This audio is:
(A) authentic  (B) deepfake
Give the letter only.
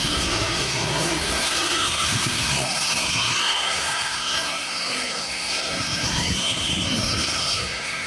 B